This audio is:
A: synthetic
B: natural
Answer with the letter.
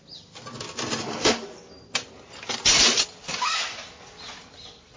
B